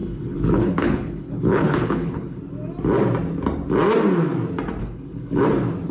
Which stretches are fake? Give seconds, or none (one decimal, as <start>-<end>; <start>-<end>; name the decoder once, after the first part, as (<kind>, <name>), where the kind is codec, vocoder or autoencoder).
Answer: 0.0-2.4 (codec, HILCodec); 4.8-5.4

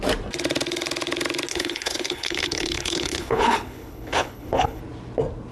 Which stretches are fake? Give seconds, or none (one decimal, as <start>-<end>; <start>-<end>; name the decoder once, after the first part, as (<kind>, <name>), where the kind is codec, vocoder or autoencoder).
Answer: 1.5-4.8 (codec, HILCodec)

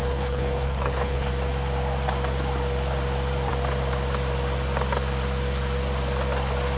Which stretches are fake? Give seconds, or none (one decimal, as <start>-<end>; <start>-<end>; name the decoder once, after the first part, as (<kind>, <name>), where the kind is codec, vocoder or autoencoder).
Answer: 0.0-1.3 (codec, HILCodec)

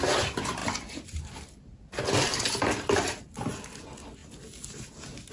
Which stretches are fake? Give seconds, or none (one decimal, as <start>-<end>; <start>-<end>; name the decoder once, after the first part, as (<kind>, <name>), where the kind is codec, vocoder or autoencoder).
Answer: none

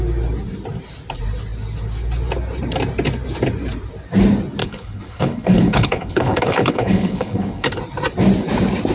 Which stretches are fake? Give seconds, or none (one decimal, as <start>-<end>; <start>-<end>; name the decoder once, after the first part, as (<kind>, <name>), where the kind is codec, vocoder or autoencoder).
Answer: 4.6-7.8 (codec, HILCodec)

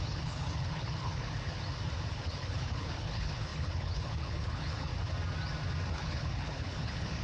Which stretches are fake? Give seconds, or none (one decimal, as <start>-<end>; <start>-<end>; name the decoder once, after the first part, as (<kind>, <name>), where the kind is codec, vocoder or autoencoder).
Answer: 0.0-1.6 (codec, HILCodec); 2.1-4.9; 5.9-7.2